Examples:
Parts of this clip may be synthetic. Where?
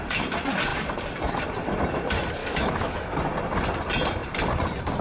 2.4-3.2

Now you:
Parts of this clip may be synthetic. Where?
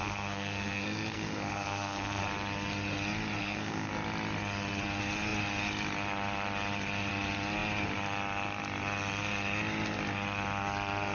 0.0-2.2; 3.4-3.9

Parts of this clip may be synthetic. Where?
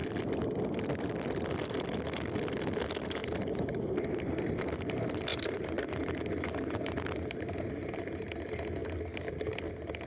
3.2-3.9; 5.3-8.2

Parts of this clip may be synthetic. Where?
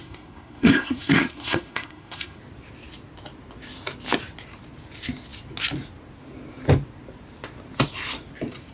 0.0-2.4